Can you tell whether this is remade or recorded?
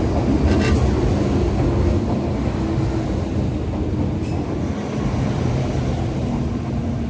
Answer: recorded